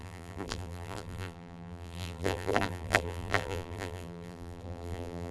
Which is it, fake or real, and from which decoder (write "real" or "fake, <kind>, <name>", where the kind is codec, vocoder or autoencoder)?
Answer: fake, vocoder, BigVGAN v2